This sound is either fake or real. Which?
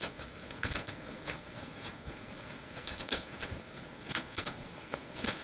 fake